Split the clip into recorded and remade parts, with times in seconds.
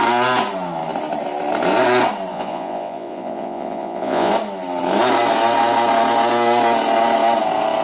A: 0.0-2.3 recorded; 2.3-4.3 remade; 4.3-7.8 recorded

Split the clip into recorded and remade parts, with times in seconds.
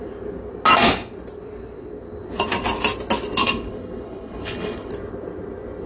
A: 0.0-3.4 recorded; 3.4-4.9 remade; 4.9-5.9 recorded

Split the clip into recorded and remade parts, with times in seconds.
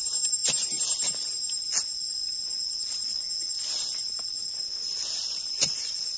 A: 0.0-6.2 recorded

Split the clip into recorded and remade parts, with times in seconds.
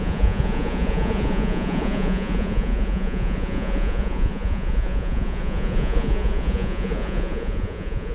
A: 0.0-8.1 remade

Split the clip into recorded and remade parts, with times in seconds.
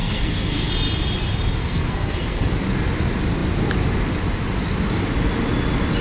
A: 0.0-0.7 remade; 0.7-1.6 recorded; 1.6-2.5 remade; 2.5-6.0 recorded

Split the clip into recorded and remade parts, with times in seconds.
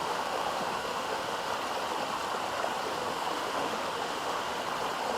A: 0.0-1.5 remade; 1.5-3.0 recorded; 3.0-4.6 remade; 4.6-5.2 recorded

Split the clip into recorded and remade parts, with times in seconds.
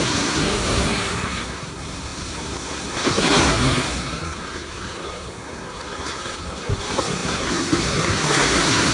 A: 0.0-8.9 remade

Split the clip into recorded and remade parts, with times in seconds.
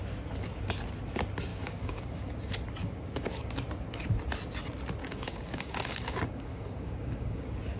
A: 0.0-1.5 recorded; 1.5-2.3 remade; 2.3-2.8 recorded; 2.8-3.5 remade; 3.5-5.0 recorded; 5.0-7.8 remade